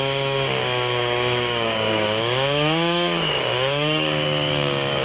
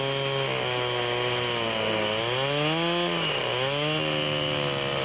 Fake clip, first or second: first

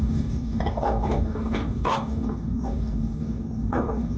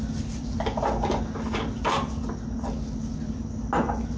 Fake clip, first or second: first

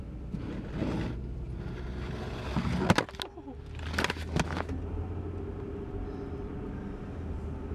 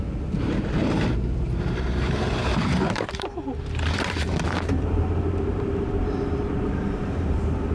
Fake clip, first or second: second